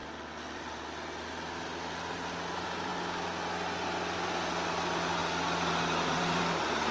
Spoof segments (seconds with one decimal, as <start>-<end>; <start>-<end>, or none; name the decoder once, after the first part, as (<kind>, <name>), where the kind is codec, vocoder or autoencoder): 2.3-2.9 (vocoder, BigVGAN v2); 4.7-5.2; 5.7-6.9